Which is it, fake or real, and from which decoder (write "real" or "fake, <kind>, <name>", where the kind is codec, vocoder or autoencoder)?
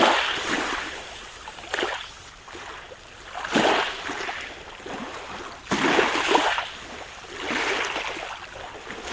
real